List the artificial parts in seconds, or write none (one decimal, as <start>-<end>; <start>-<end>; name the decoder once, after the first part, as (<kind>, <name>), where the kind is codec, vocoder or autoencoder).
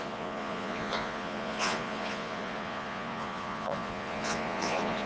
0.0-5.1 (vocoder, Vocos)